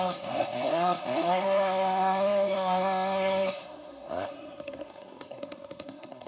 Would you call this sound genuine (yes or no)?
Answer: no